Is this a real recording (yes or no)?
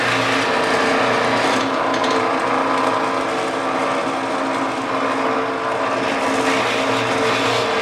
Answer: yes